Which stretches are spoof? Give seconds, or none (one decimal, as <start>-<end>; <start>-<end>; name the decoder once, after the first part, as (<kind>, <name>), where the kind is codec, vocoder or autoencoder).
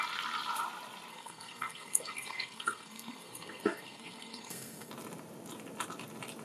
1.1-4.9 (codec, SNAC)